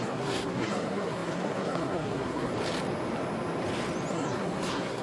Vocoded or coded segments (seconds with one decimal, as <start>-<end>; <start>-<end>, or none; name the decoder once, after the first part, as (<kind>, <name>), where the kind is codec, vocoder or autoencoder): 0.0-2.5 (codec, SNAC); 4.1-5.0